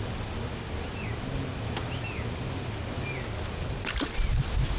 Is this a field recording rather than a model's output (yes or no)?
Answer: yes